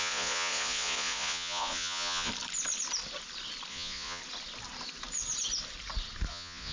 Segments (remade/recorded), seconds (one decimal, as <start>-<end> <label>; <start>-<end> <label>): 0.0-2.3 remade; 2.3-3.7 recorded; 3.7-4.2 remade; 4.2-6.3 recorded; 6.3-6.7 remade